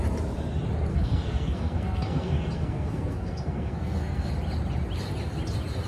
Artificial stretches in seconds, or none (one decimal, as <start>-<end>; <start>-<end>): 0.9-4.3